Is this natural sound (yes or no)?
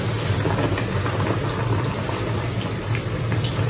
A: yes